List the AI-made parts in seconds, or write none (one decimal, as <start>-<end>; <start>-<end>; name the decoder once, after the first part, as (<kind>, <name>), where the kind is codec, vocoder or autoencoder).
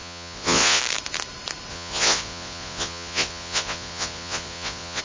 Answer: 0.0-0.8 (vocoder, Vocos); 1.7-5.0